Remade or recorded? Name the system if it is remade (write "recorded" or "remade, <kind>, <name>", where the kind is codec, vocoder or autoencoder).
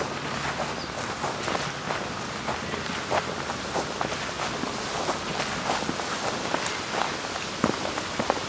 recorded